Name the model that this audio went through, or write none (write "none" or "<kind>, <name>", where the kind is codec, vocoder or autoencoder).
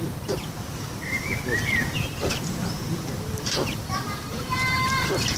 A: vocoder, BigVGAN v2